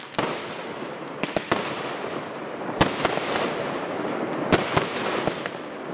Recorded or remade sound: recorded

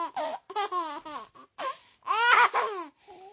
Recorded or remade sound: recorded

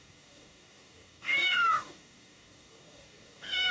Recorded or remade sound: remade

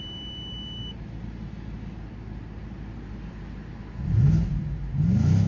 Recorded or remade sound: recorded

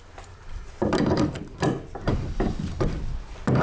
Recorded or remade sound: recorded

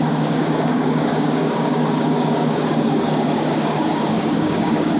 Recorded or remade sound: remade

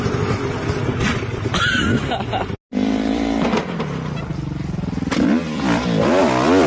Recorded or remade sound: recorded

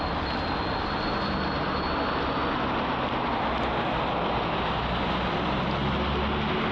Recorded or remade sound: recorded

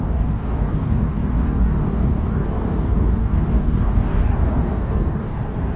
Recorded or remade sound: remade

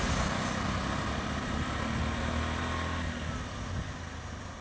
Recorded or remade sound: recorded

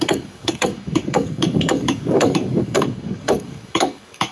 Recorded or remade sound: remade